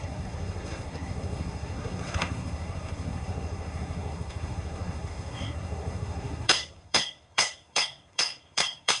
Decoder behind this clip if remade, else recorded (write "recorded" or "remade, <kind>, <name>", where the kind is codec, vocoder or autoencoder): remade, codec, SNAC